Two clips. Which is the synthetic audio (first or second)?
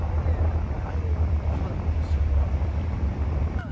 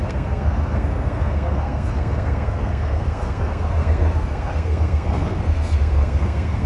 second